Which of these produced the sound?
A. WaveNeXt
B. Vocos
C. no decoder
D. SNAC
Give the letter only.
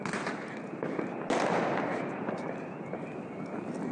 C